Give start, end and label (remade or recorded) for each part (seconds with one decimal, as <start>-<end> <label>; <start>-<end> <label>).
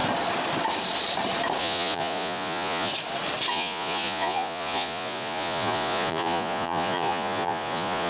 0.0-1.6 recorded; 1.6-2.9 remade; 2.9-3.5 recorded; 3.5-8.1 remade